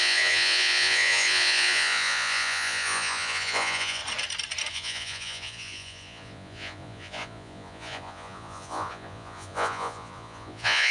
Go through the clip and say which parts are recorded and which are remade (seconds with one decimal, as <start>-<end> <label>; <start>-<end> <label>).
0.0-4.0 remade; 4.0-4.7 recorded; 4.7-10.9 remade